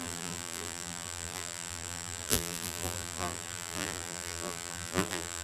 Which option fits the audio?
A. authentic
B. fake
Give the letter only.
B